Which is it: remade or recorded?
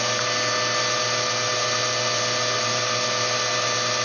recorded